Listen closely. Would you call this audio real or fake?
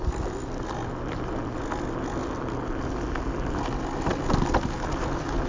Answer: real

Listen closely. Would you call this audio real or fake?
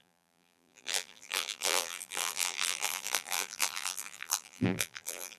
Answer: fake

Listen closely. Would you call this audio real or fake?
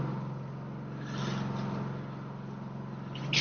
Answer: real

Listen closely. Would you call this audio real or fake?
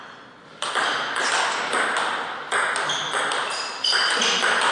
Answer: real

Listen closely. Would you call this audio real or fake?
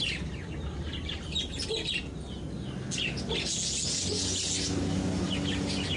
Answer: real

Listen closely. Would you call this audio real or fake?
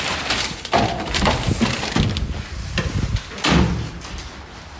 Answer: real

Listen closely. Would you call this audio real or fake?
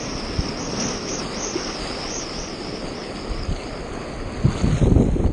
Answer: real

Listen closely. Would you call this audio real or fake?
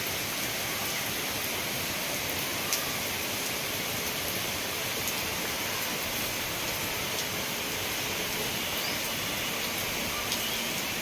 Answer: real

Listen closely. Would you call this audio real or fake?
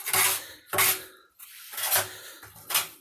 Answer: real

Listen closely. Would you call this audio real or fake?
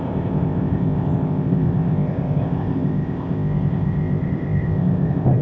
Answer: fake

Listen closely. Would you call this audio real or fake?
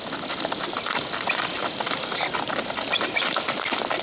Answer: real